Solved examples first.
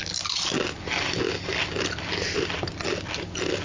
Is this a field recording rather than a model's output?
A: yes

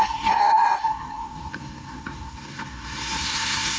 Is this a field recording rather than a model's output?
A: no